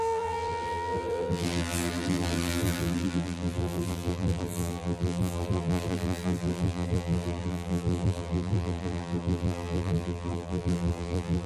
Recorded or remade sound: remade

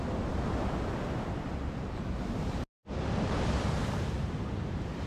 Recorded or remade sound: recorded